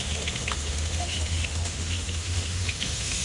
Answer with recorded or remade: remade